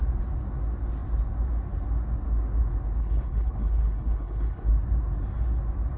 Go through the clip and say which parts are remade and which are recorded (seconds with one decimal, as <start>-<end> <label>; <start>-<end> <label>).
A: 0.0-3.0 recorded; 3.0-4.7 remade; 4.7-6.0 recorded